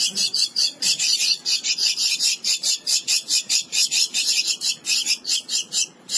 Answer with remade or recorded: remade